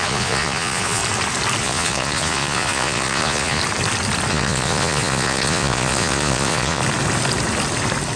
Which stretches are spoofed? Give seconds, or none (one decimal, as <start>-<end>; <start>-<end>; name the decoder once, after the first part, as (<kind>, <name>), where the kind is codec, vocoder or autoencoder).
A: 0.0-1.0 (vocoder, Vocos); 1.6-3.6; 4.3-6.8